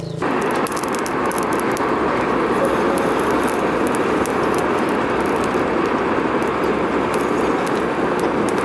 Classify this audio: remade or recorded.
recorded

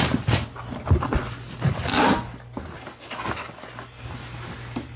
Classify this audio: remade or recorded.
recorded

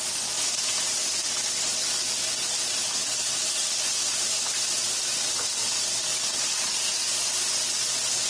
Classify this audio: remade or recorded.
recorded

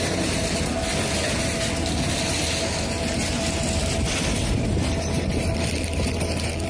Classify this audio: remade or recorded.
recorded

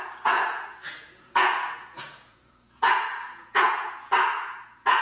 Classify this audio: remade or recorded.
remade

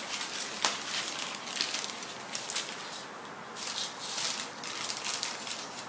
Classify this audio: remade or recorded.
recorded